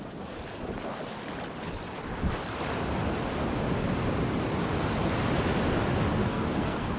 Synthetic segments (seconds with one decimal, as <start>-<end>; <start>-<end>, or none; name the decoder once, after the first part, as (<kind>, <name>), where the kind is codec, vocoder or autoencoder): 6.2-7.0 (codec, SNAC)

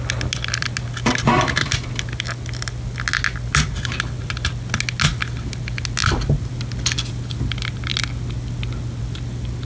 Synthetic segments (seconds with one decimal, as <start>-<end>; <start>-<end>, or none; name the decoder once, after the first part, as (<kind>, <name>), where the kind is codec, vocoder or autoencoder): none

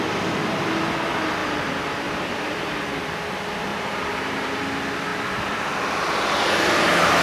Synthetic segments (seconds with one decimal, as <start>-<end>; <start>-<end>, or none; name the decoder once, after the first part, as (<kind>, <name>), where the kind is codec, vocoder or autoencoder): 0.4-0.9 (vocoder, BigVGAN v2); 1.4-2.8; 3.7-4.6

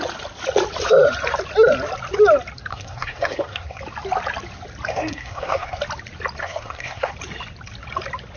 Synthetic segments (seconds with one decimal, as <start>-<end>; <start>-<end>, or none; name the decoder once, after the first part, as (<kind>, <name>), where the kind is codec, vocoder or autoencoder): 2.7-3.8 (codec, SNAC); 4.9-5.8; 6.4-7.1

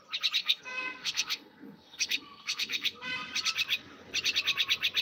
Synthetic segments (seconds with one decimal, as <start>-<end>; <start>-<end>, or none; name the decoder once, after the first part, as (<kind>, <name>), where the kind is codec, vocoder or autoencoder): 0.4-3.0 (codec, SNAC)